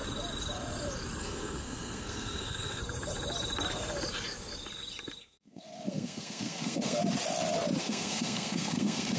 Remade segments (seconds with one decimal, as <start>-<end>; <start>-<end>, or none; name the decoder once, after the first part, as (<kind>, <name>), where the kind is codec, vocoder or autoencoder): 1.2-2.8 (codec, SNAC); 5.2-7.0; 7.8-9.2